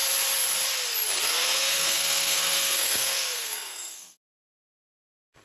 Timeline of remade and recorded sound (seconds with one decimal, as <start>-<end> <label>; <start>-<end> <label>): 0.0-1.2 recorded; 1.2-5.4 remade